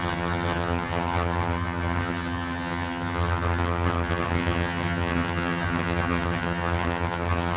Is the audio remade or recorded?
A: remade